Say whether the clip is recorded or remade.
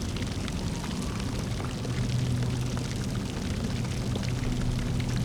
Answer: recorded